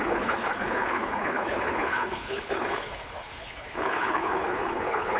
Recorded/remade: remade